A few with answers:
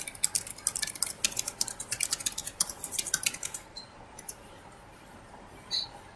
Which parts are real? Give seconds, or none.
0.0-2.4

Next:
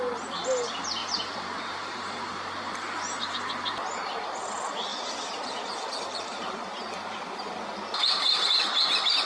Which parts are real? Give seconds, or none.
0.0-1.0; 3.5-4.9; 6.5-9.3

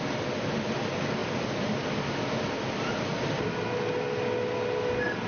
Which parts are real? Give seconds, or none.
0.0-1.2; 2.0-3.1; 3.6-5.3

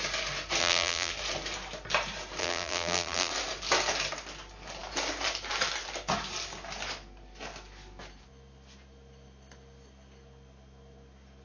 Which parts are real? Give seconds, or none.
0.0-0.6; 1.1-2.4; 3.3-11.4

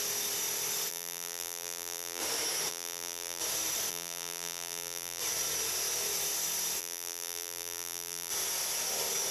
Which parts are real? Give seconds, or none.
0.0-0.9; 2.2-2.7; 3.4-3.9; 5.2-6.8; 8.3-9.3

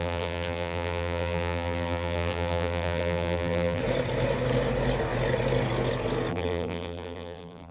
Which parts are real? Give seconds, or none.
3.8-6.3